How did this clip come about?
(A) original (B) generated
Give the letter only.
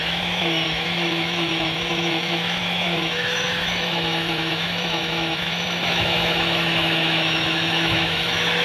B